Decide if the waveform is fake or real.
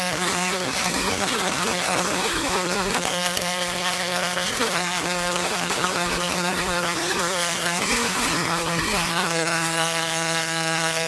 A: fake